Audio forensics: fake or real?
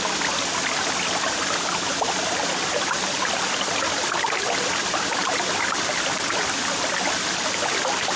real